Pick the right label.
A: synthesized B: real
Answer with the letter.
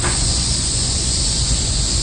A